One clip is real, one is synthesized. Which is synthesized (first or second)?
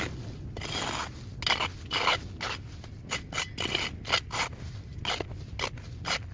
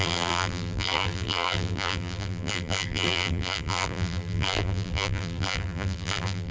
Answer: second